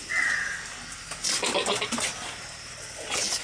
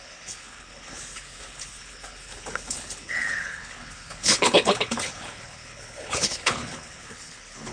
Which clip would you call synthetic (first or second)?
second